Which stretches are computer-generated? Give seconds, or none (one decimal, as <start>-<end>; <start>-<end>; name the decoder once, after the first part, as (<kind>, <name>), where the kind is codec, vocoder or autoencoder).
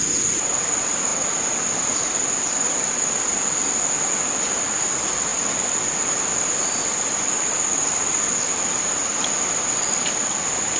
none